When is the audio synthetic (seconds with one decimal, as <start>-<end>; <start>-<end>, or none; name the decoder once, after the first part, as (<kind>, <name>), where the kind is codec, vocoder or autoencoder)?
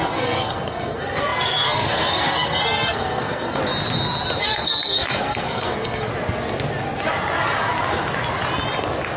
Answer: 0.0-3.6 (codec, SNAC); 4.4-6.1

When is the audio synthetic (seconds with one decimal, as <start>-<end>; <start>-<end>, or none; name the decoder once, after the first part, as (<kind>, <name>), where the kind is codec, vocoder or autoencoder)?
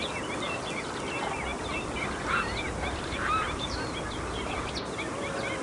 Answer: 1.5-4.5 (vocoder, BigVGAN v2)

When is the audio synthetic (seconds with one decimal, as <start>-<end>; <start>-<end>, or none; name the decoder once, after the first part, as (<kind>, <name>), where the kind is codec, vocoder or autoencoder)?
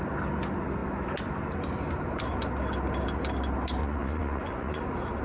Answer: 3.8-4.8 (vocoder, Vocos)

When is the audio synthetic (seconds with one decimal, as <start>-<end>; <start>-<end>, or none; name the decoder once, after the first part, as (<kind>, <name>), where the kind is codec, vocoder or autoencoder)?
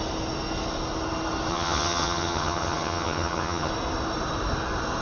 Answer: 1.5-3.7 (vocoder, HiFi-GAN)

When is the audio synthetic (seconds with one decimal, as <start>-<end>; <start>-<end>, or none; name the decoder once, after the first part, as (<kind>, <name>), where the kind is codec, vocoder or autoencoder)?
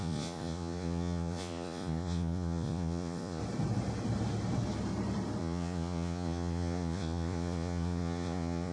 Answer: 0.0-3.4 (vocoder, Vocos); 5.4-8.7